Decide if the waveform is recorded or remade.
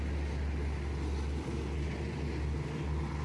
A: recorded